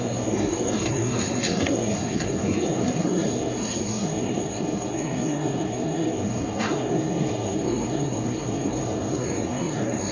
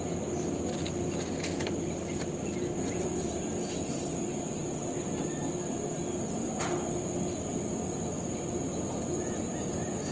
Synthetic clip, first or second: first